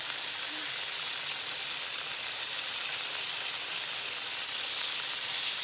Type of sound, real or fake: fake